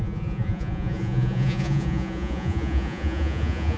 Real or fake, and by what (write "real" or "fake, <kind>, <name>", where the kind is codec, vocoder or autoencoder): fake, vocoder, Vocos